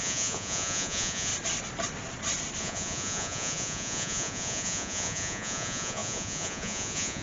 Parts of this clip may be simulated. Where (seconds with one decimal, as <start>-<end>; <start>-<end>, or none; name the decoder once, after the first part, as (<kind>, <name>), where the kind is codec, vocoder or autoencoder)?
0.0-1.3 (vocoder, Vocos); 2.6-7.2